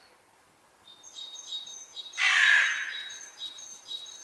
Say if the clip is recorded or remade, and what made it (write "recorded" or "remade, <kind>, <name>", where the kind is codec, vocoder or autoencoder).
recorded